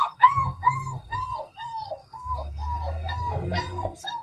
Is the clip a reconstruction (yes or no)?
yes